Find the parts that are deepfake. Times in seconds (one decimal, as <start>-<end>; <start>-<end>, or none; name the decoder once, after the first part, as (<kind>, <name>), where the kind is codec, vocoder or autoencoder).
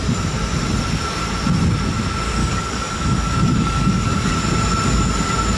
2.4-4.3 (codec, DAC)